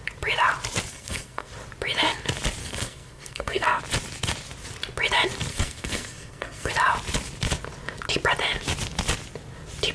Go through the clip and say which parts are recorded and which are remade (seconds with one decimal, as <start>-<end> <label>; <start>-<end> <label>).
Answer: 0.0-0.9 recorded; 0.9-1.5 remade; 1.5-2.6 recorded; 2.6-3.8 remade; 3.8-5.5 recorded; 5.5-6.7 remade; 6.7-9.9 recorded